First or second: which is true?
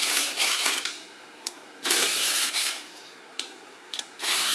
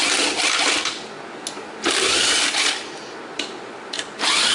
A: second